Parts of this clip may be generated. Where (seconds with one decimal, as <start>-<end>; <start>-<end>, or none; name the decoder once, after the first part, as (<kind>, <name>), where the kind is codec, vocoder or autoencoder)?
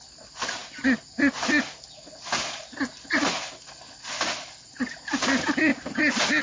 none